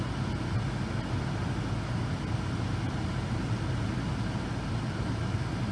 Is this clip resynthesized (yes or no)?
no